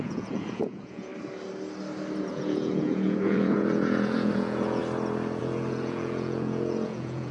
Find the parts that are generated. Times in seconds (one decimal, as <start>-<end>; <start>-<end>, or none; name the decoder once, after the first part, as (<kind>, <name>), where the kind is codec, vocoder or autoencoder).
0.0-1.1 (vocoder, Vocos); 2.2-4.8; 5.4-7.3